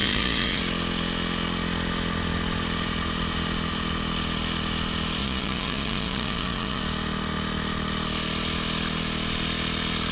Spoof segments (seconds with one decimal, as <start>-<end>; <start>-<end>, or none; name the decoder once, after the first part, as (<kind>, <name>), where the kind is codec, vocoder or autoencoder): 0.0-0.6 (vocoder, Vocos); 5.2-6.8